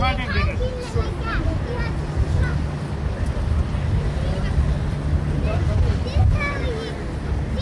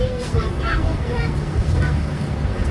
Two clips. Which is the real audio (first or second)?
first